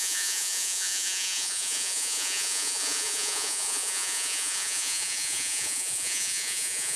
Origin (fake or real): fake